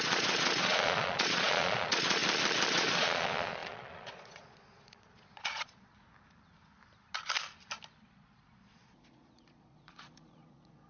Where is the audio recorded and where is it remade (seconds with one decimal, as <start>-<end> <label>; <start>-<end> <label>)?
0.0-2.2 remade; 2.2-2.7 recorded; 2.7-5.9 remade; 5.9-8.0 recorded; 8.0-10.9 remade